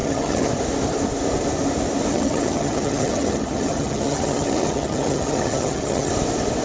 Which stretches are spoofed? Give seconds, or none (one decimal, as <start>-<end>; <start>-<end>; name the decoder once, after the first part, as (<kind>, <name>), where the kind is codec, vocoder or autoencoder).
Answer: 0.0-0.5 (vocoder, HiFi-GAN); 2.1-6.1